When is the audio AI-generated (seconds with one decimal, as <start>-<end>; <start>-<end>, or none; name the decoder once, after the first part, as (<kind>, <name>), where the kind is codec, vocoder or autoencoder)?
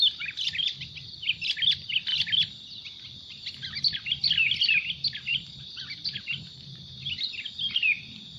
5.3-7.0 (vocoder, BigVGAN v2)